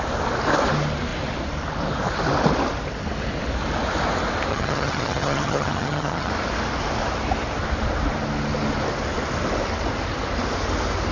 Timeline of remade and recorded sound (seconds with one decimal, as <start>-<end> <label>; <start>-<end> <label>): 0.0-4.5 recorded; 4.5-6.3 remade; 6.3-11.1 recorded